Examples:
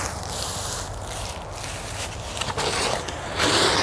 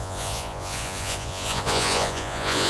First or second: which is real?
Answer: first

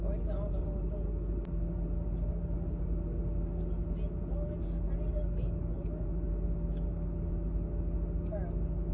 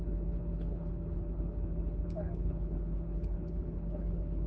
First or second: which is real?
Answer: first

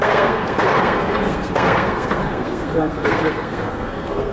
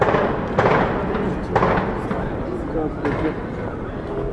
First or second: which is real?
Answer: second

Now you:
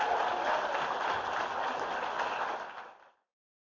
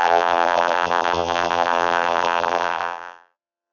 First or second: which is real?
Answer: first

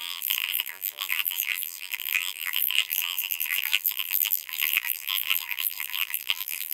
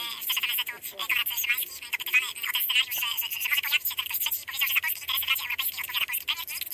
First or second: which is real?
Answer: second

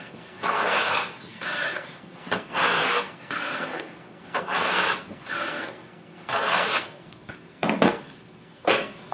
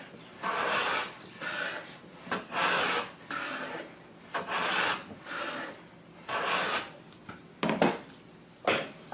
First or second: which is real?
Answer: second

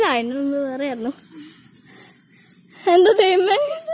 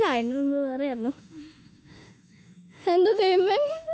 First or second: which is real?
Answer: first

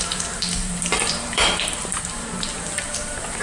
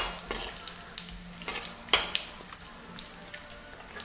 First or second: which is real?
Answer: second